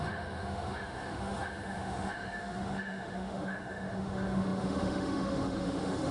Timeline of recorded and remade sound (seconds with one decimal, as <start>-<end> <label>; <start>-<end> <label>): 0.0-6.1 remade